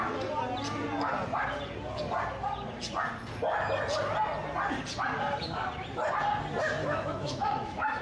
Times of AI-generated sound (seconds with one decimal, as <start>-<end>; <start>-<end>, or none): 6.8-8.0